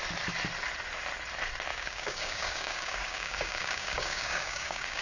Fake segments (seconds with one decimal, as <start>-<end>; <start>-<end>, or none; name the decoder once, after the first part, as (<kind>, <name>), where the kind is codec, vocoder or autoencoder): 1.7-5.0 (codec, DAC)